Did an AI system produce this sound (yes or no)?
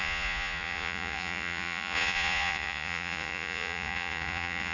yes